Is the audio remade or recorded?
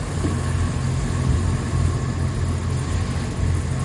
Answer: recorded